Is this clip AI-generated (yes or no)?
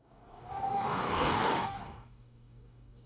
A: yes